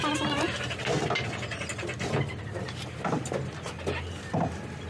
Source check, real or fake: real